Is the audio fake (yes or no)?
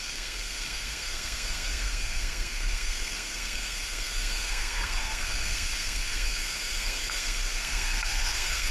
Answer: yes